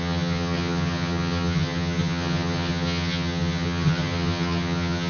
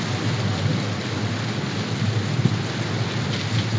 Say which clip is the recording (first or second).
second